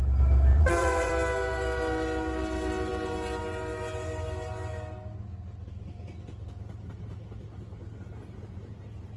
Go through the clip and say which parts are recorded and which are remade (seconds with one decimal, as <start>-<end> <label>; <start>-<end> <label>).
0.0-0.5 recorded; 0.5-1.1 remade; 1.1-9.2 recorded